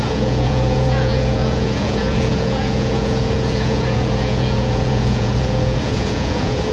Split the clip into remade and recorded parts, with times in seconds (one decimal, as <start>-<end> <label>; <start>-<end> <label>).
0.0-6.7 remade